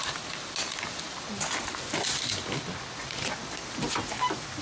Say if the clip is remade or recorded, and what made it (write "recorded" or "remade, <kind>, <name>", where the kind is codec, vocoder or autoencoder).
recorded